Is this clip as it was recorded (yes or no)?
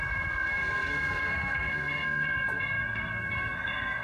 no